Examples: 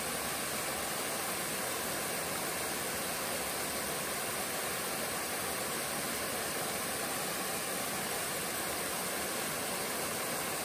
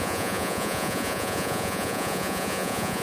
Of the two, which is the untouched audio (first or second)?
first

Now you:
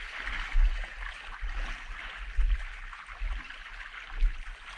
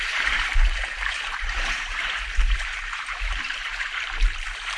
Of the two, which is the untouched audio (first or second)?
first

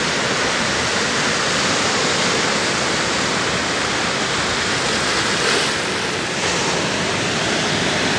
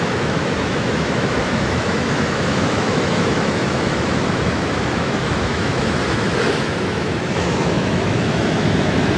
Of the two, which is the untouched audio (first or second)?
first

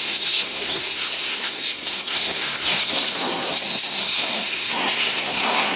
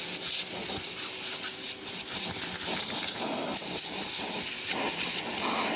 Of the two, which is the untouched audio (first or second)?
second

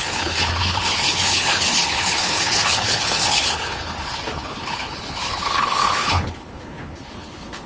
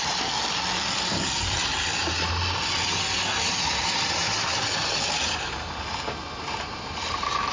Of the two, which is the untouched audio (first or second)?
second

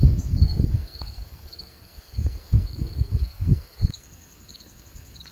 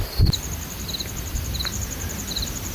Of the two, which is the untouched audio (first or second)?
second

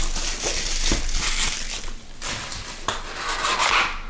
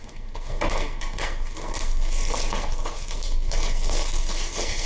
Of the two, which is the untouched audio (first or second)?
first